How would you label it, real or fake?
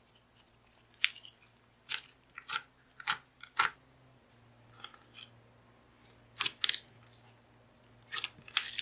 real